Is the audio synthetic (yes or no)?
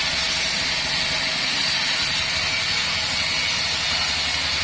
no